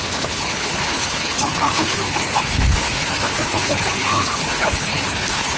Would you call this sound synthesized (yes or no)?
yes